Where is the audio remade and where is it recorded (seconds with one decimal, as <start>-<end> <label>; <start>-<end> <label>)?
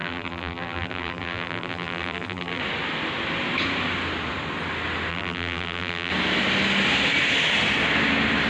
0.0-2.6 remade; 2.6-5.1 recorded; 5.1-6.1 remade; 6.1-8.5 recorded